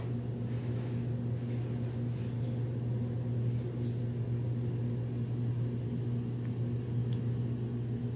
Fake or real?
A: real